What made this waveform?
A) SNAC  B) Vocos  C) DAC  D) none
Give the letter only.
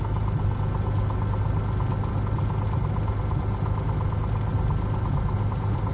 D